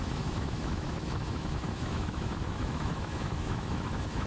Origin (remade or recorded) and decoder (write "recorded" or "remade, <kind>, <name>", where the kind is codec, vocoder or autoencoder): remade, autoencoder, DAC-VAE